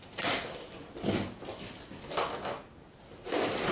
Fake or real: real